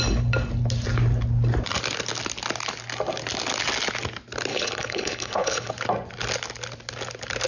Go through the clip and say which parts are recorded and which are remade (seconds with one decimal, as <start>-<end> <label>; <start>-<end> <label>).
0.0-4.5 recorded; 4.5-5.7 remade; 5.7-7.5 recorded